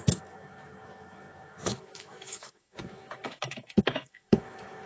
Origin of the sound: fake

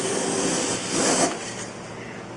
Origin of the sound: real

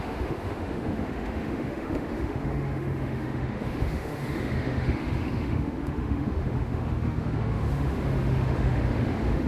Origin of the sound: fake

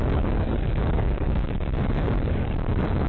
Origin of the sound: fake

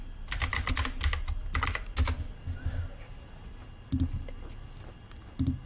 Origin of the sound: real